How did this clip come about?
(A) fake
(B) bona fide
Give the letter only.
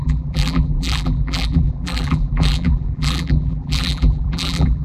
A